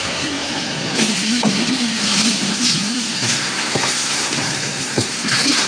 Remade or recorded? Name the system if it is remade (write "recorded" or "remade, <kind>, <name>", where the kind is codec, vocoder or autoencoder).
remade, codec, SNAC